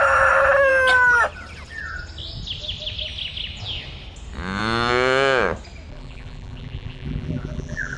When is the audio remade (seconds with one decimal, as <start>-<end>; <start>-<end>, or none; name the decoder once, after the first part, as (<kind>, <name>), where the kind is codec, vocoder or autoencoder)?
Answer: 5.9-8.0 (vocoder, BigVGAN v2)